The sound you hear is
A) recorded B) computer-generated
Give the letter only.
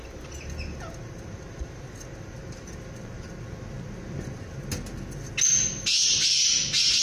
A